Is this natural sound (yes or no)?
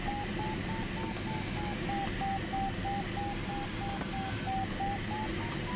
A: yes